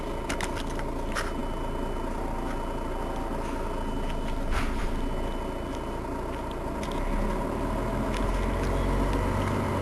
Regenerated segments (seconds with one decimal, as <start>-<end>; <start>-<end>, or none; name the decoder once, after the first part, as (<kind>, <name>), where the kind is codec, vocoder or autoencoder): none